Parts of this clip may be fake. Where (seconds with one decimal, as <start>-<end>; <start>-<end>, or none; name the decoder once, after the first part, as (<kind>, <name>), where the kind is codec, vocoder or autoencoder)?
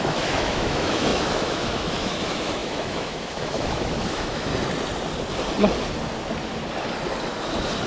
0.0-4.5 (autoencoder, DAC-VAE)